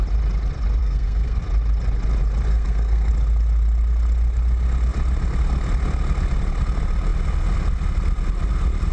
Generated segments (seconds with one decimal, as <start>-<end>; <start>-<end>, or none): 0.8-1.4; 2.5-3.1